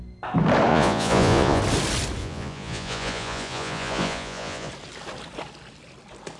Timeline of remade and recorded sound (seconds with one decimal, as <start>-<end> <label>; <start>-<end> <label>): 0.0-0.7 recorded; 0.7-1.6 remade; 1.6-2.2 recorded; 2.2-4.7 remade; 4.7-6.4 recorded